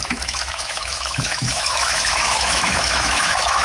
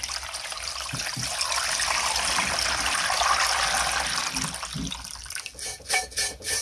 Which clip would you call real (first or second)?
second